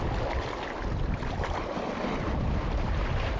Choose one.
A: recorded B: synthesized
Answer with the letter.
A